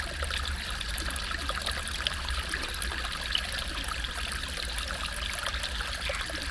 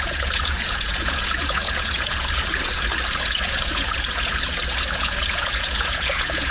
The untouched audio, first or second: first